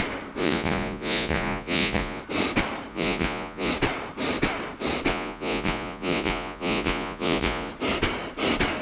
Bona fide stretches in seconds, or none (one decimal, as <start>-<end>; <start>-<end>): 0.0-0.4; 2.2-2.9; 3.7-5.1; 7.7-8.8